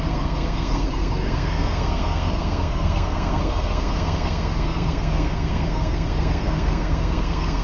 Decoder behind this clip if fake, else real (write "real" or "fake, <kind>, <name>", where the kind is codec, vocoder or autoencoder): fake, codec, SNAC